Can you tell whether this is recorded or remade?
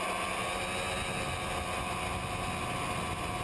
recorded